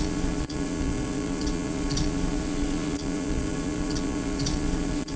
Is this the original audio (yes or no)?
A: no